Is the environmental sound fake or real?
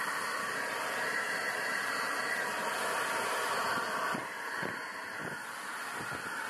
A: real